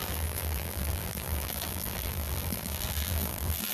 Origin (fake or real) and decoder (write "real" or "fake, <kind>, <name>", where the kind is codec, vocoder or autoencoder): fake, vocoder, BigVGAN v2